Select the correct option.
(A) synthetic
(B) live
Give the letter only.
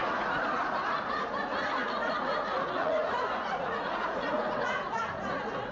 A